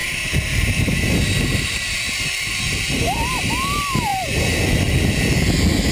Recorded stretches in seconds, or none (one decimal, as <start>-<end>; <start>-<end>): 3.5-4.1; 4.6-5.9